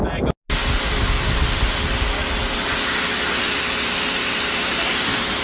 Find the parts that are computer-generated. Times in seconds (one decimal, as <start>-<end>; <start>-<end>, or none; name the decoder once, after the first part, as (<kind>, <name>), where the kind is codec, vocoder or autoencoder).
none